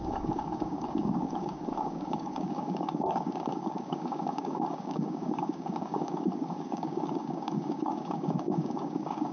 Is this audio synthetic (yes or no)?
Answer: yes